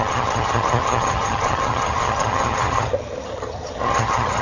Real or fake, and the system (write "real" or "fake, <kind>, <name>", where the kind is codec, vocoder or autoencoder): fake, vocoder, HiFi-GAN